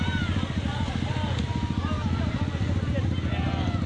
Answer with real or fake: real